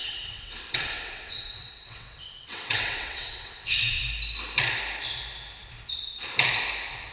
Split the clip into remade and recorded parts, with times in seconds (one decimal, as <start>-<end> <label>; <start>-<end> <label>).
0.0-4.0 remade; 4.0-7.1 recorded